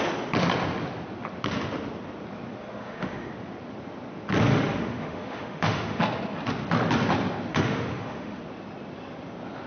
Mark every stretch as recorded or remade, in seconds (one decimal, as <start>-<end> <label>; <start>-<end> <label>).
0.0-2.6 recorded; 2.6-3.3 remade; 3.3-4.5 recorded; 4.5-6.0 remade; 6.0-7.5 recorded; 7.5-8.4 remade; 8.4-9.7 recorded

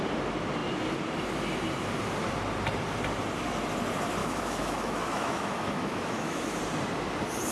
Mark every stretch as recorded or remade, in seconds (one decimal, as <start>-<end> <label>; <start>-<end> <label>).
0.0-4.2 recorded; 4.2-6.6 remade; 6.6-7.5 recorded

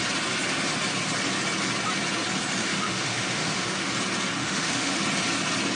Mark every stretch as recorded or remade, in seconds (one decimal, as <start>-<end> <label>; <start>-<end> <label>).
0.0-2.6 recorded; 2.6-3.9 remade; 3.9-4.4 recorded; 4.4-5.0 remade; 5.0-5.8 recorded

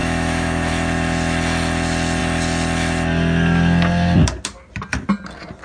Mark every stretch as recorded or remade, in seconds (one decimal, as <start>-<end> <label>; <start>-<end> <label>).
0.0-0.7 remade; 0.7-5.6 recorded

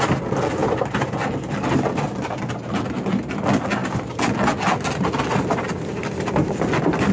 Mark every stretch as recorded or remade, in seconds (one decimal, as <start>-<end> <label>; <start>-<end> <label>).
0.0-7.1 recorded

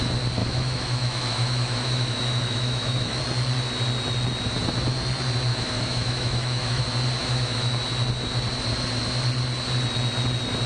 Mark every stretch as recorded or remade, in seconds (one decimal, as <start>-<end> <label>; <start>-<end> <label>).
0.0-0.4 recorded; 0.4-3.2 remade; 3.2-5.5 recorded; 5.5-6.8 remade; 6.8-7.2 recorded; 7.2-7.8 remade; 7.8-10.7 recorded

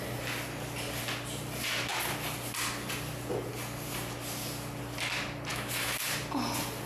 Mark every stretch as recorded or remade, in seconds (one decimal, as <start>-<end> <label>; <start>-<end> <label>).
0.0-5.5 recorded; 5.5-6.0 remade; 6.0-6.9 recorded